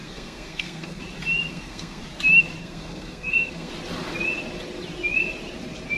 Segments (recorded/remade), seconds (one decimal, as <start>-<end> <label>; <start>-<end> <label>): 0.0-1.0 remade; 1.0-1.5 recorded; 1.5-2.0 remade; 2.0-2.6 recorded; 2.6-3.7 remade; 3.7-6.0 recorded